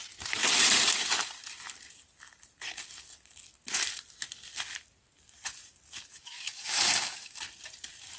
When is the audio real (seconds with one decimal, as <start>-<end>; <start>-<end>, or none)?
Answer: 0.0-6.1; 7.4-8.2